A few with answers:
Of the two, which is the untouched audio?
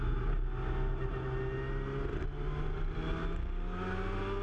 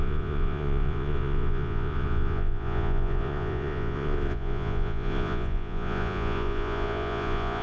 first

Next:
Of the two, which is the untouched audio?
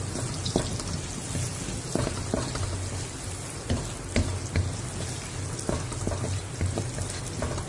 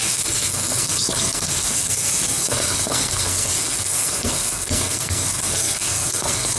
first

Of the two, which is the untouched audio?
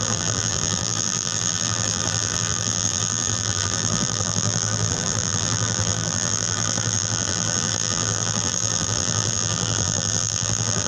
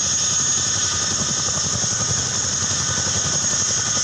second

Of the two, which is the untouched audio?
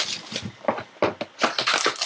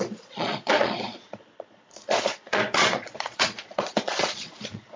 first